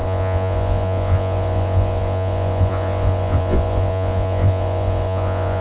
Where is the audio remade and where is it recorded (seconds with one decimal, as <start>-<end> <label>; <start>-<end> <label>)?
0.0-5.6 remade